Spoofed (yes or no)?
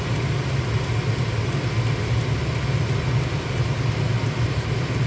no